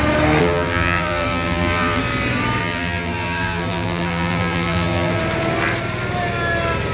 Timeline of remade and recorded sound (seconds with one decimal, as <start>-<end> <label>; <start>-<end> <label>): 0.0-0.4 recorded; 0.4-2.0 remade; 2.0-2.6 recorded; 2.6-5.2 remade; 5.2-6.9 recorded